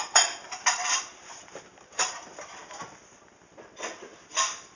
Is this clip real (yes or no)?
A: no